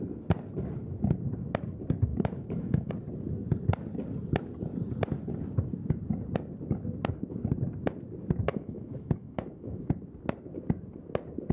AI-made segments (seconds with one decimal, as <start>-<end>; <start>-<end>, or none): 2.1-2.9; 8.5-9.9